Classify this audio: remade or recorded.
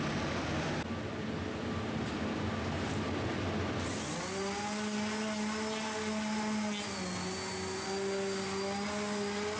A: recorded